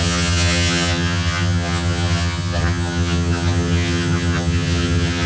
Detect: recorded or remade remade